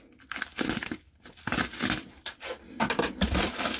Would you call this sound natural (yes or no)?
yes